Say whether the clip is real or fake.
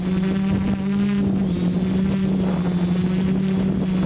real